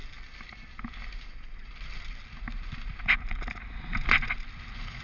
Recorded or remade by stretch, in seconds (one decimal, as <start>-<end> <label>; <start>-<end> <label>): 0.0-5.0 recorded